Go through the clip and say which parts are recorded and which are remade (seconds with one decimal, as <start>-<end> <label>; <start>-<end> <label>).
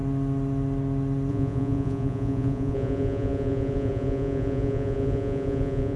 0.0-1.3 recorded; 1.3-6.0 remade